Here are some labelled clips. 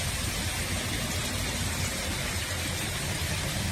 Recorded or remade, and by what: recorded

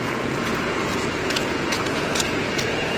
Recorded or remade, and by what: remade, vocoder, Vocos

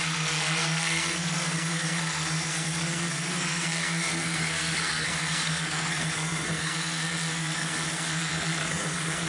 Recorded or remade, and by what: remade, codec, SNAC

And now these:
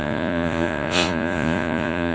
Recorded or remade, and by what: remade, vocoder, Vocos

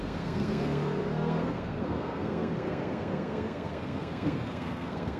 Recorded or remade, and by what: remade, codec, SNAC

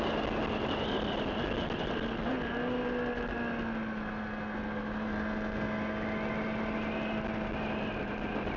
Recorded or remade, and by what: recorded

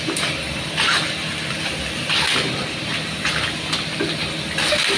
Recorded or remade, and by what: recorded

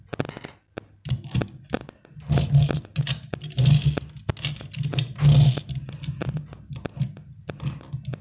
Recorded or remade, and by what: recorded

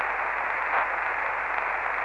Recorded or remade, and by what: recorded